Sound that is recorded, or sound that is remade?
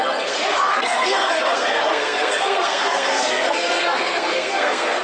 remade